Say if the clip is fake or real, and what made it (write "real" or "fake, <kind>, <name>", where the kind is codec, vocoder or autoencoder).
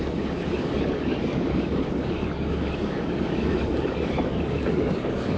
fake, codec, DAC